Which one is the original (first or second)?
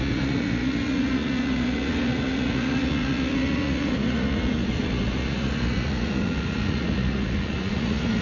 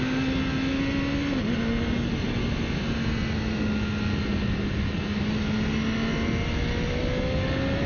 second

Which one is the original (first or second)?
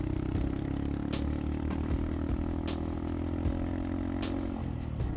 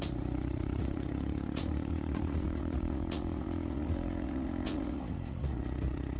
first